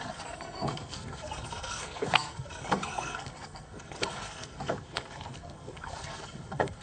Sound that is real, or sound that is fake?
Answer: fake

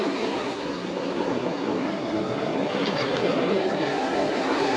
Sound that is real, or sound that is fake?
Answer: fake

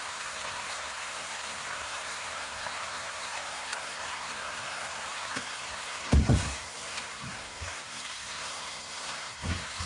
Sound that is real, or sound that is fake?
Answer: fake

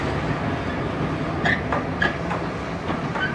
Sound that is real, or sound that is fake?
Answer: real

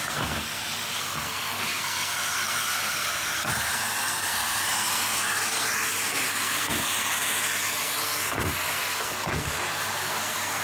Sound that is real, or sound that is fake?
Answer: fake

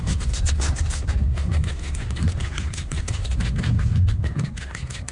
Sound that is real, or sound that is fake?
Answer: fake